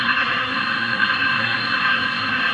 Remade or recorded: remade